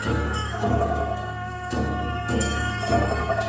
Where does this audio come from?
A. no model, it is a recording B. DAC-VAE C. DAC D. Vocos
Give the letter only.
C